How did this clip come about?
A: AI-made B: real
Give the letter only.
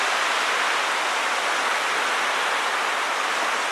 B